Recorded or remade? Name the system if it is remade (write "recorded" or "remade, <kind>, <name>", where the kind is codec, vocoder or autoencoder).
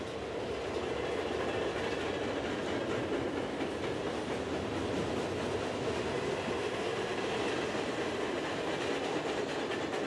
recorded